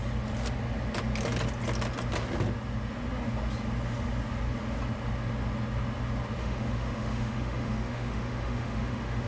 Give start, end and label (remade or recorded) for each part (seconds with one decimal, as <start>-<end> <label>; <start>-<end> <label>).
0.0-6.4 recorded; 6.4-9.3 remade